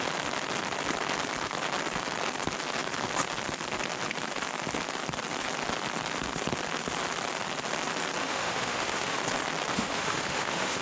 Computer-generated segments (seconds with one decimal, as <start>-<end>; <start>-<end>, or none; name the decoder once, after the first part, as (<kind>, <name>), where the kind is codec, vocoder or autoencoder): 8.2-9.2 (autoencoder, DAC-VAE); 9.7-10.8